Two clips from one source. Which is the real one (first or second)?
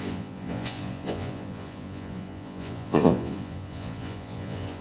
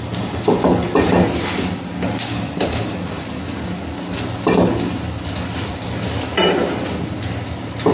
second